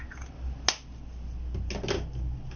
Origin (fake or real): real